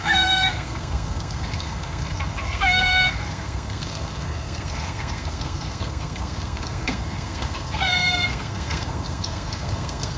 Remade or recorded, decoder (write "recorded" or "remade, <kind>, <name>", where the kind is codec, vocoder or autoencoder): remade, codec, SNAC